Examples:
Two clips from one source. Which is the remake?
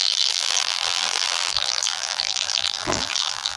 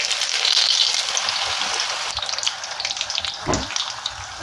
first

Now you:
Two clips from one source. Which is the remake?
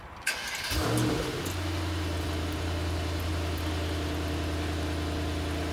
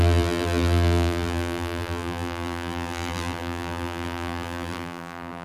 second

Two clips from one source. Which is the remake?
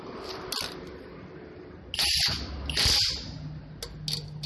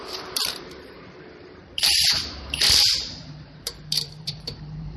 second